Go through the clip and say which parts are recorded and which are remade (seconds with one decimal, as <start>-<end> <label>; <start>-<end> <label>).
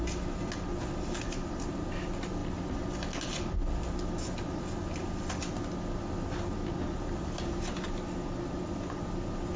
0.0-9.6 recorded